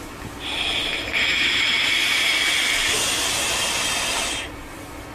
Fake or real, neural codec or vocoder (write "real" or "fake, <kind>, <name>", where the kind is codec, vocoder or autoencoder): real